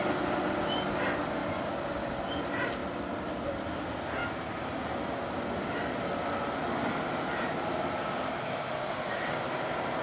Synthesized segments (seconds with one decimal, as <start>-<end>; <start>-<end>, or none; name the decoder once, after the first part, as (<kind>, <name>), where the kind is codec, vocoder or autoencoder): none